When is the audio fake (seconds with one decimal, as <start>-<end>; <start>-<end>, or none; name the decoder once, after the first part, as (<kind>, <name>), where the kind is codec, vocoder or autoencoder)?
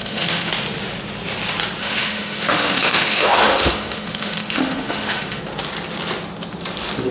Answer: 0.0-0.5 (autoencoder, DAC-VAE); 1.8-5.4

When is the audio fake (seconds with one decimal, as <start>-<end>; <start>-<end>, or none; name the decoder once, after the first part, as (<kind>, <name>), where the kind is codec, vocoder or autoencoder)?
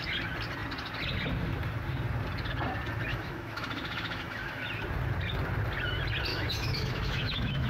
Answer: 3.1-4.6 (autoencoder, DAC-VAE); 6.3-7.7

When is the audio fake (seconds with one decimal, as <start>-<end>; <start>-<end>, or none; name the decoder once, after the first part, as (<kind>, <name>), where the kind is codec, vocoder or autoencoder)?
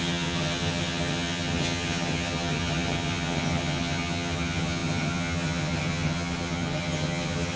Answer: 0.0-7.6 (vocoder, HiFi-GAN)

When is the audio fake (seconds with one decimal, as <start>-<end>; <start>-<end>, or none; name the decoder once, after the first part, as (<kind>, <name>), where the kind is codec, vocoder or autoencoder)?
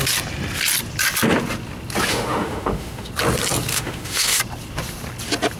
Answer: 2.1-3.1 (autoencoder, DAC-VAE); 3.7-4.4